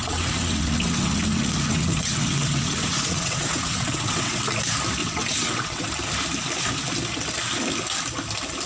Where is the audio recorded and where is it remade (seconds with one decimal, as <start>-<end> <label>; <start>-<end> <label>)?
0.0-4.4 remade; 4.4-5.0 recorded; 5.0-5.9 remade; 5.9-8.7 recorded